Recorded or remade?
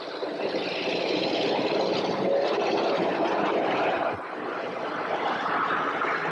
recorded